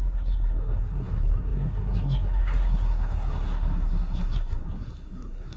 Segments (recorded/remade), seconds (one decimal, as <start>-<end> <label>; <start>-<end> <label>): 0.0-5.6 remade